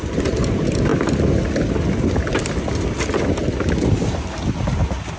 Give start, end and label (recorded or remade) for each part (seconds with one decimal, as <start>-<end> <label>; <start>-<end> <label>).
0.0-5.2 recorded